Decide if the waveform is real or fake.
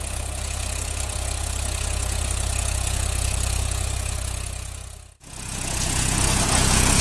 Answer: fake